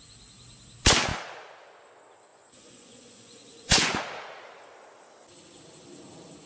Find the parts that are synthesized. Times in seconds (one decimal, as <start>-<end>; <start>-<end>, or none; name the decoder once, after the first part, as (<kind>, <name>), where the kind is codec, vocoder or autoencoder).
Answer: 2.3-4.0 (vocoder, Vocos)

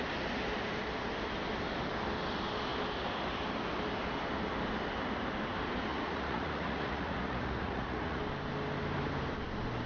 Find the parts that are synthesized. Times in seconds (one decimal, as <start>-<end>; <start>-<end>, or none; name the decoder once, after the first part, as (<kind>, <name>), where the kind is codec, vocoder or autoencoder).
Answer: 5.9-8.2 (vocoder, Vocos)

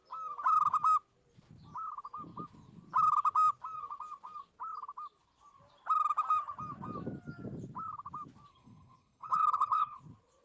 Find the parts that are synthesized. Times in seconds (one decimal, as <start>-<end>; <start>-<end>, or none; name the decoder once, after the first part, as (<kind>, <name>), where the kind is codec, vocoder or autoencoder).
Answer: 8.5-10.0 (codec, HILCodec)

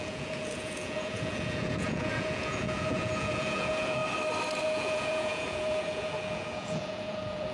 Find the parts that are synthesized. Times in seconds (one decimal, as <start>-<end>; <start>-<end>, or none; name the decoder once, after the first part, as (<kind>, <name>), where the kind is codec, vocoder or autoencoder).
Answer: 0.0-4.0 (vocoder, Vocos); 4.6-7.5

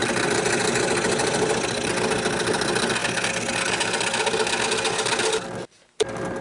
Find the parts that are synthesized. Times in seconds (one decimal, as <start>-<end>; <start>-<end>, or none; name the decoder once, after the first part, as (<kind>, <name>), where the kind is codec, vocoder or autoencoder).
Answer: none